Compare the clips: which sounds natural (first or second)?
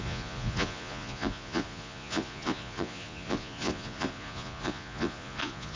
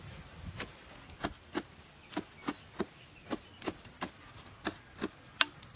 second